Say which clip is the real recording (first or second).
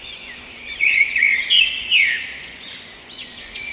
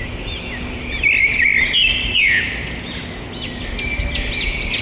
second